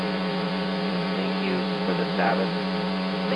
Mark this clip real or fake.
fake